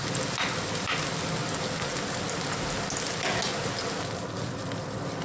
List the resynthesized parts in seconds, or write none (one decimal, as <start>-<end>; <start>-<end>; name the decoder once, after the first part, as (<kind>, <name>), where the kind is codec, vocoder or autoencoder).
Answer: 0.0-1.4 (vocoder, BigVGAN v2); 4.5-5.2